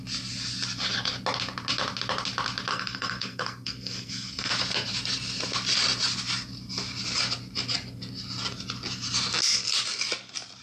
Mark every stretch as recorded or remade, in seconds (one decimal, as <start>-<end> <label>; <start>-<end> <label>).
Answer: 0.0-2.7 recorded; 2.7-4.5 remade; 4.5-10.6 recorded

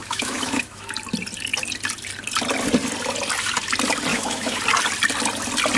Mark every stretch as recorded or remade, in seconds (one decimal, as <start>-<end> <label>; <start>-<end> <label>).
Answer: 0.0-0.9 remade; 0.9-4.1 recorded; 4.1-4.6 remade; 4.6-5.8 recorded